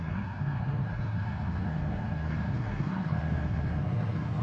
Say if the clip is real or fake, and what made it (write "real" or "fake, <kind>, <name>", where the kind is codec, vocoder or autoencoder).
fake, codec, SNAC